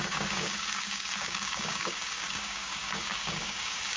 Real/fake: fake